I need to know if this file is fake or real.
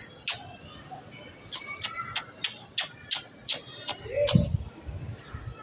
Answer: real